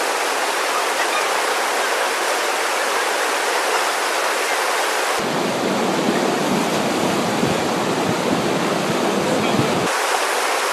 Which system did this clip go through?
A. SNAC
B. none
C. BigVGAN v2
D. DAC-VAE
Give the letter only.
B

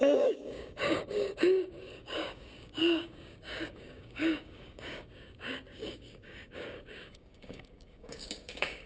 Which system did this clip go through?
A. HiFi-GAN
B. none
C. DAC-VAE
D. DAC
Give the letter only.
D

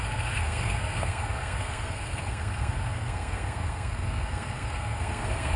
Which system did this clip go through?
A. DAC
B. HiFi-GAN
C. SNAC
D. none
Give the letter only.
C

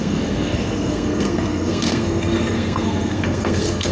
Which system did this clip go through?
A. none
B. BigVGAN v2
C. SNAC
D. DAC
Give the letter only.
C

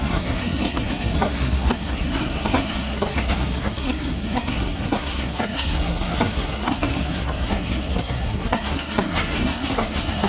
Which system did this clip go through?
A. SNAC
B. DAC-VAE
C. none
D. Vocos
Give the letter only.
A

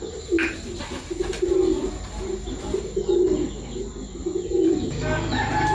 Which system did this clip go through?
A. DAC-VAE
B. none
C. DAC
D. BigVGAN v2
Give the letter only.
B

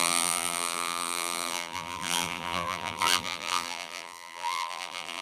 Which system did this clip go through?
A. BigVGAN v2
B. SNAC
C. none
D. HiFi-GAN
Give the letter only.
A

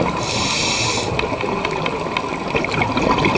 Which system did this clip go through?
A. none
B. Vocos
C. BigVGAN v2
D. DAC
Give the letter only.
A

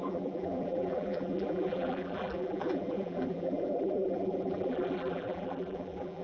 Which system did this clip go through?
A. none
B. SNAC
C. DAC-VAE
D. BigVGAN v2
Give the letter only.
D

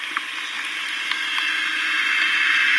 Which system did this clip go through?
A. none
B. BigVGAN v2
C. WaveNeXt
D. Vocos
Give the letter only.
A